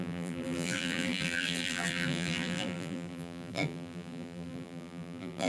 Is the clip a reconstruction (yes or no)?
yes